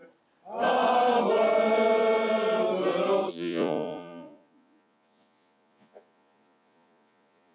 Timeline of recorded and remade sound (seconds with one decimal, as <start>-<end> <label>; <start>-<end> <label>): 0.0-3.3 recorded; 3.3-7.5 remade